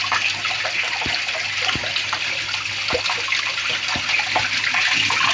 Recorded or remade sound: recorded